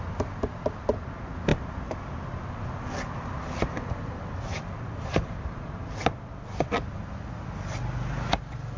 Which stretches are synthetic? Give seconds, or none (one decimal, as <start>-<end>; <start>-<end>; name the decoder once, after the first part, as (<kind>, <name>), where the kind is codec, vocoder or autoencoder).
none